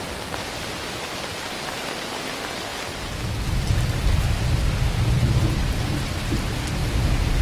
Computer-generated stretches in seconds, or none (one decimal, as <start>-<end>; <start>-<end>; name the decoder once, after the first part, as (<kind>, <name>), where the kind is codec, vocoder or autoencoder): none